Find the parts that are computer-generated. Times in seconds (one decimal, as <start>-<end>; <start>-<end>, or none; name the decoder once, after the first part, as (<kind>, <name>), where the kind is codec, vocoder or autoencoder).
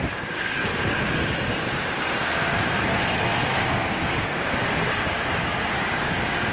0.0-0.7 (codec, DAC); 3.5-6.5